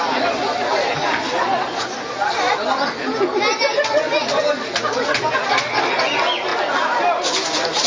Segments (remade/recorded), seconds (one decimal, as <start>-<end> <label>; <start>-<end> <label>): 0.0-7.9 recorded

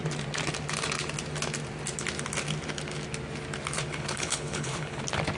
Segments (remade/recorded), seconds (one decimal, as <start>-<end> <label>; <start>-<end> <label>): 0.0-3.9 recorded; 3.9-5.0 remade; 5.0-5.4 recorded